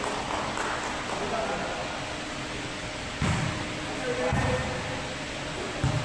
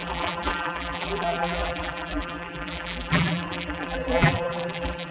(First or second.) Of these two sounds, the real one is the first